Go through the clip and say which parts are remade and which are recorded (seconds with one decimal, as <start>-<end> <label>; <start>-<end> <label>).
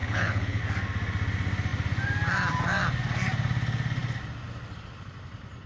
0.0-0.6 remade; 0.6-5.7 recorded